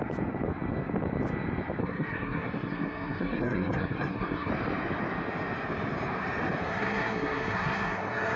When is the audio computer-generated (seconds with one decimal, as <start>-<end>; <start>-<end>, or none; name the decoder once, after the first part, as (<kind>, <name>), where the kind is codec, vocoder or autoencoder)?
1.8-4.5 (codec, SNAC); 6.6-8.4

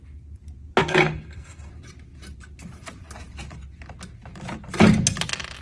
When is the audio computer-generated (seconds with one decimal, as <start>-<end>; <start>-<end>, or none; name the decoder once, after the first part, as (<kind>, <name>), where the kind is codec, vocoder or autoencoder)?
0.8-1.7 (codec, SNAC)